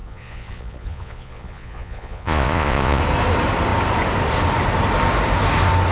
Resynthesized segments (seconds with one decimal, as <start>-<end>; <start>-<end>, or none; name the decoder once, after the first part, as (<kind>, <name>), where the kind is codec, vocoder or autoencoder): 0.0-3.0 (vocoder, Vocos)